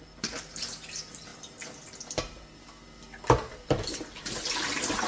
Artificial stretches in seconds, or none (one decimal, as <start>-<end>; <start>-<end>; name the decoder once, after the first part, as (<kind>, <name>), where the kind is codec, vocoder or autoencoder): none